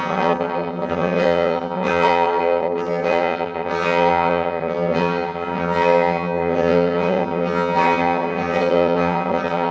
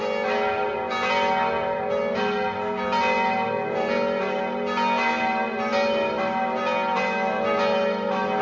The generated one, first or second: first